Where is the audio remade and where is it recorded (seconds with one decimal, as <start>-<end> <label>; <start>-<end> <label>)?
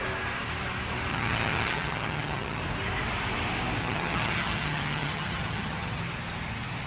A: 0.0-1.1 recorded; 1.1-2.6 remade; 2.6-3.8 recorded; 3.8-6.0 remade; 6.0-6.9 recorded